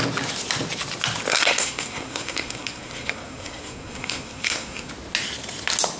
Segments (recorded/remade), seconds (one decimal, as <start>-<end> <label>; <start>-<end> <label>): 0.0-1.3 recorded; 1.3-4.9 remade; 4.9-6.0 recorded